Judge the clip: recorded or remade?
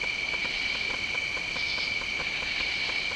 recorded